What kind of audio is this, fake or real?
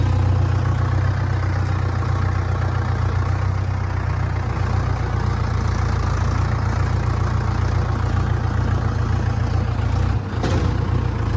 real